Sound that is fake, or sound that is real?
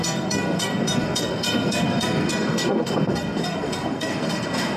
fake